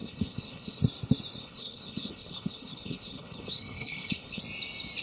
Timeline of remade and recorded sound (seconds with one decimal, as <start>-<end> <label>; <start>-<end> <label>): 0.0-0.8 remade; 0.8-1.4 recorded; 1.4-4.4 remade; 4.4-5.0 recorded

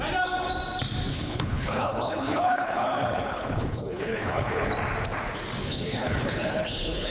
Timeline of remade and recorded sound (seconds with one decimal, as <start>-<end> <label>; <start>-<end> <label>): 0.0-1.1 recorded; 1.1-4.7 remade; 4.7-5.6 recorded; 5.6-7.1 remade